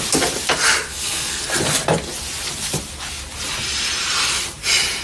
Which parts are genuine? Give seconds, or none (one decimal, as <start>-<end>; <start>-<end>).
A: 0.0-0.9; 1.4-5.0